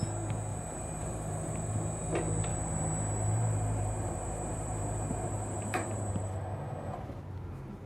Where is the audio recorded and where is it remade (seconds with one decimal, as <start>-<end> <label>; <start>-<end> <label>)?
0.0-0.5 recorded; 0.5-1.5 remade; 1.5-2.5 recorded; 2.5-7.2 remade; 7.2-7.9 recorded